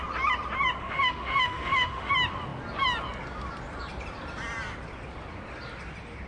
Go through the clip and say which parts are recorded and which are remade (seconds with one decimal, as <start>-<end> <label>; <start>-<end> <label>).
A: 0.0-0.8 recorded; 0.8-2.1 remade; 2.1-6.3 recorded